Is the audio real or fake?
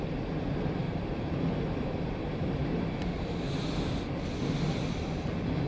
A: real